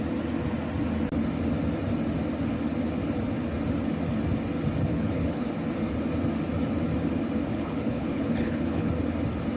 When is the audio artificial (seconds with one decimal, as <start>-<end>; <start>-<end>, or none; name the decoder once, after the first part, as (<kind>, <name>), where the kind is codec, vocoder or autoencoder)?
4.9-5.5 (codec, HILCodec); 7.5-8.9